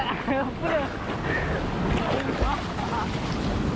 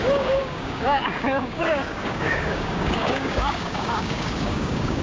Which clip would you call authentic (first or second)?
first